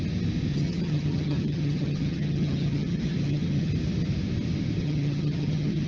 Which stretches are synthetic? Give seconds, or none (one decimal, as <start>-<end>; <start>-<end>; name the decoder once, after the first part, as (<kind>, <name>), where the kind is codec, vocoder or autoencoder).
0.5-3.7 (vocoder, HiFi-GAN); 4.8-5.9